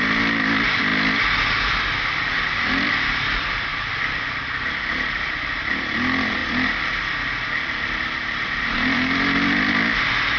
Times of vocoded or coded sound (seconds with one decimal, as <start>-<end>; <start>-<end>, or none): 0.0-0.9; 2.8-6.4; 7.5-10.4